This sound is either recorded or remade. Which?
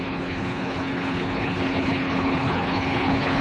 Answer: remade